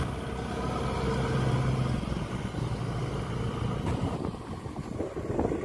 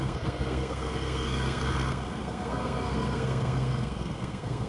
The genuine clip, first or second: first